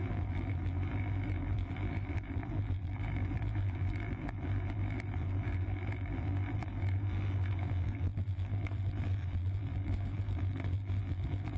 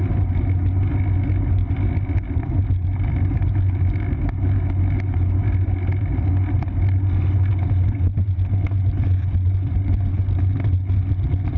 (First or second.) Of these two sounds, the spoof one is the first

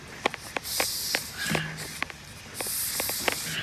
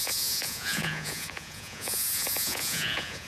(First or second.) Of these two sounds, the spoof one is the second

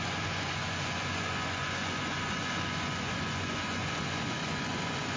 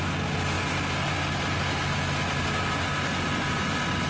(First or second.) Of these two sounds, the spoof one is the first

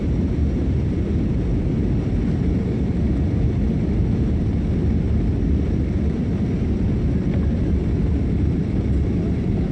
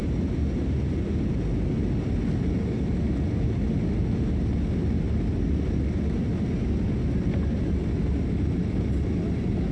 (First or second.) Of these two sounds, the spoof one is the first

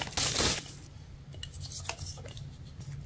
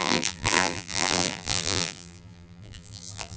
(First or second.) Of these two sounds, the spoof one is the second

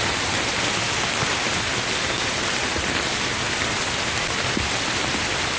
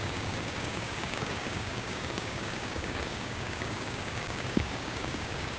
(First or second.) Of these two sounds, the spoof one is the second